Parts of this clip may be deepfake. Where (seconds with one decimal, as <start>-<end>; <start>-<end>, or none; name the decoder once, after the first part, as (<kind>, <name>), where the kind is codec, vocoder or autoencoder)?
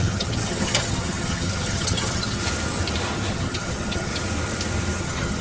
0.0-2.4 (vocoder, HiFi-GAN); 3.3-4.1; 5.0-5.4